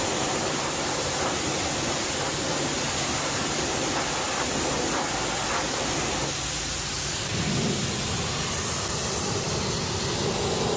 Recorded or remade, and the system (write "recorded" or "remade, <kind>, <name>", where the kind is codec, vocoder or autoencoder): recorded